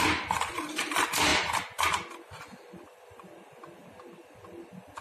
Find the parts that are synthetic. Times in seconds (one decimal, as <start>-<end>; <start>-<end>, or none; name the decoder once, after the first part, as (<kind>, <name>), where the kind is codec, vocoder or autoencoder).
0.0-1.3 (vocoder, BigVGAN v2); 2.2-5.0